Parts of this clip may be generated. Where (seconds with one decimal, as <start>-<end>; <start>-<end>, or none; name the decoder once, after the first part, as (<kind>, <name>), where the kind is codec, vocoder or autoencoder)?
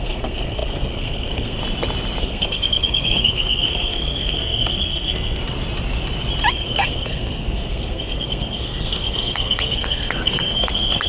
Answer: 0.0-1.6 (codec, SNAC); 2.2-5.4; 6.5-11.1